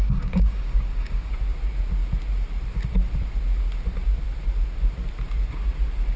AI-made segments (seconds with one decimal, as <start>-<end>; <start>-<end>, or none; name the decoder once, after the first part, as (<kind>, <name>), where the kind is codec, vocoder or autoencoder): 0.0-1.3 (codec, DAC)